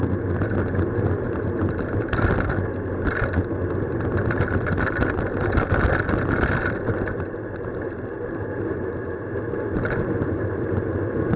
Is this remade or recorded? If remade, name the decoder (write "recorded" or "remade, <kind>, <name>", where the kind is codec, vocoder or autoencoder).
recorded